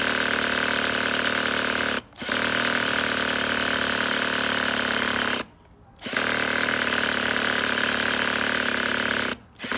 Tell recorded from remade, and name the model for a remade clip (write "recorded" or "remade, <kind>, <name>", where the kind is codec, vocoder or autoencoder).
recorded